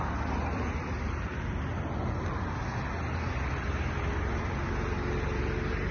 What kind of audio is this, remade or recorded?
recorded